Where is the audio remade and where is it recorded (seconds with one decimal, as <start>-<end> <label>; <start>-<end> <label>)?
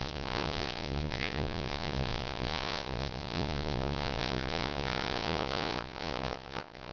0.0-6.9 remade